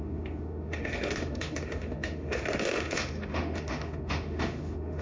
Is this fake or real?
fake